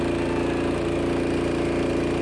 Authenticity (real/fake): real